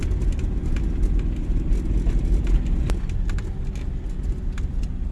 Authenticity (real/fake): real